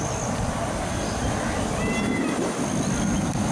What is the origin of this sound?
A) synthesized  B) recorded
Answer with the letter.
B